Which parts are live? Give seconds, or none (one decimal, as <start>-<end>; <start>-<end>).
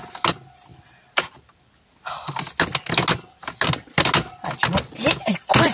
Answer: 0.0-5.7